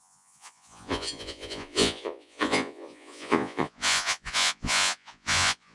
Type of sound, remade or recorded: remade